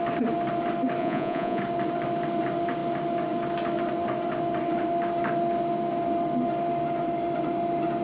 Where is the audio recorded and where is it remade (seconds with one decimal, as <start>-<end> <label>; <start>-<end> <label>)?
0.0-1.0 recorded; 1.0-1.6 remade; 1.6-8.0 recorded

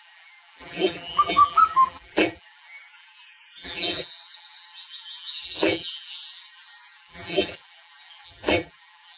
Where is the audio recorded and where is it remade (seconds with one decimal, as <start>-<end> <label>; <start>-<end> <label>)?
0.0-9.2 remade

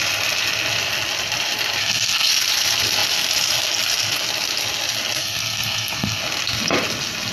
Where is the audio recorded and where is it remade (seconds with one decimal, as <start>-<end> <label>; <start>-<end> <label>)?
0.0-1.8 recorded; 1.8-2.3 remade; 2.3-5.2 recorded; 5.2-6.2 remade; 6.2-7.3 recorded

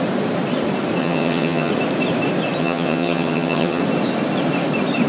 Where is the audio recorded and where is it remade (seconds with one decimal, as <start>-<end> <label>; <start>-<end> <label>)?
0.0-1.0 recorded; 1.0-1.7 remade; 1.7-2.6 recorded; 2.6-3.8 remade; 3.8-5.1 recorded

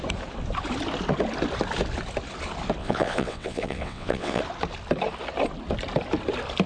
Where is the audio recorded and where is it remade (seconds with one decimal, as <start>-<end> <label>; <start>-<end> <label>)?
0.0-2.8 recorded; 2.8-4.4 remade; 4.4-6.7 recorded